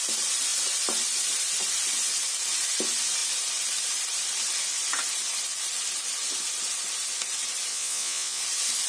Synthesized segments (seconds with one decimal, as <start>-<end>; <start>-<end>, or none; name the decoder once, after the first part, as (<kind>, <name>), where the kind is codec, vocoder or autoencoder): 7.7-8.4 (vocoder, Vocos)